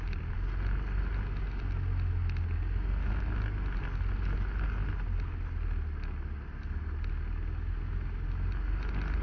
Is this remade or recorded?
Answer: recorded